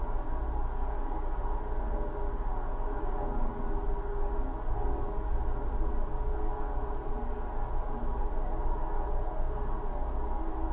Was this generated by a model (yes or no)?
no